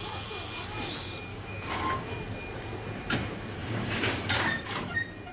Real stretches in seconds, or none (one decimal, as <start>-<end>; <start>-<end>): 0.0-1.3; 2.1-3.6; 4.4-5.3